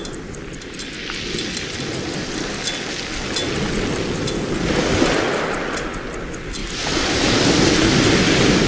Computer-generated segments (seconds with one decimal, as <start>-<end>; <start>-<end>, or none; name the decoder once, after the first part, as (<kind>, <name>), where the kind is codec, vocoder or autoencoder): none